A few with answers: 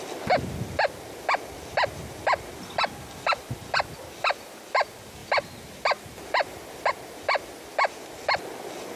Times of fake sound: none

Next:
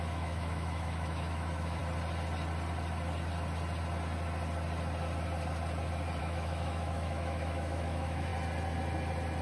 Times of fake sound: 0.0-1.8 (autoencoder, DAC-VAE); 6.2-8.3

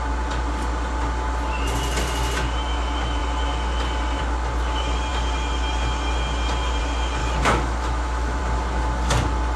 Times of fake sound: 7.2-8.4 (autoencoder, DAC-VAE)

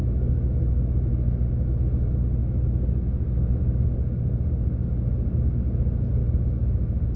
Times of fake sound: 0.0-1.1 (autoencoder, DAC-VAE); 2.4-3.8

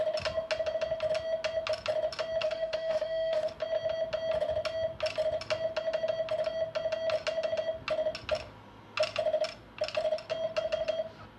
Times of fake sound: 2.4-3.5 (autoencoder, DAC-VAE)

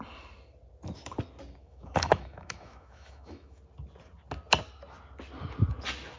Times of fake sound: 1.6-3.6 (autoencoder, DAC-VAE)

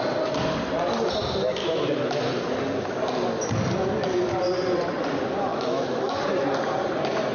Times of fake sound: 1.6-2.2 (autoencoder, DAC-VAE); 5.5-6.2

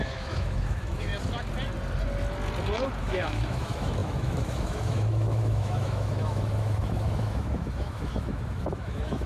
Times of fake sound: 0.0-1.1 (autoencoder, DAC-VAE); 3.0-9.3